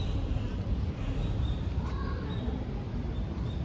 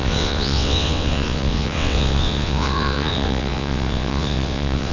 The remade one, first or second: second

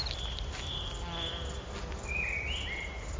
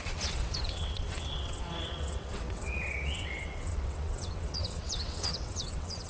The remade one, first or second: second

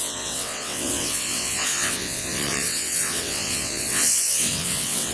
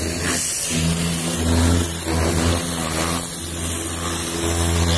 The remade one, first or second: first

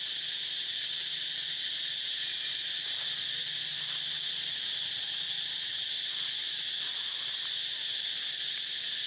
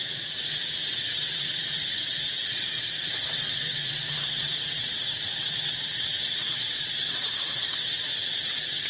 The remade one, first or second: second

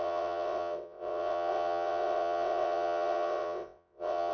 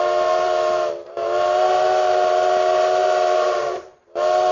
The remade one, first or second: first